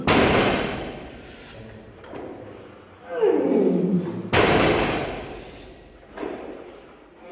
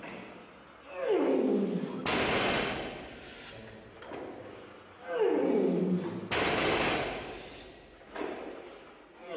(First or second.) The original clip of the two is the second